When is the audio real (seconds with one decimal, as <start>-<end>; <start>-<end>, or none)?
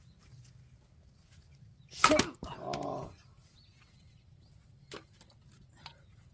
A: 0.0-6.3